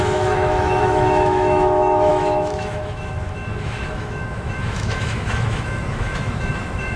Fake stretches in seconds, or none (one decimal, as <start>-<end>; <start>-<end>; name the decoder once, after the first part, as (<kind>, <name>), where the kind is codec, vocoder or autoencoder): 0.0-7.0 (autoencoder, DAC-VAE)